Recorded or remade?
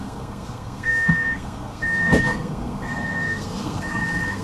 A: remade